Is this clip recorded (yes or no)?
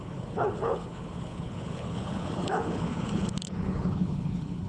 no